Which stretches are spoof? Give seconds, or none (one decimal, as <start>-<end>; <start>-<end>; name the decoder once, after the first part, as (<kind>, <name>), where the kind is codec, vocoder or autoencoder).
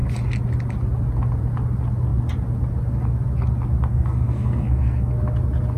3.9-5.1 (codec, SNAC)